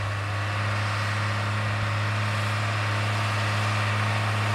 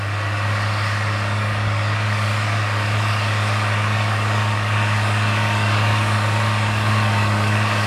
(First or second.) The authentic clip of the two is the first